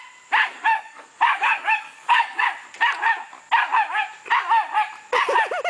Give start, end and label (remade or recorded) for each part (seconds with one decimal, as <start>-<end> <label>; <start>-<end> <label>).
0.0-0.5 recorded; 0.5-2.4 remade; 2.4-5.7 recorded